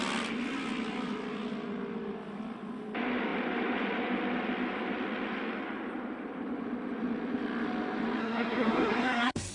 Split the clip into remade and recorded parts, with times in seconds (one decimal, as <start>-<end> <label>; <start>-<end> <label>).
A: 0.0-8.2 recorded; 8.2-9.5 remade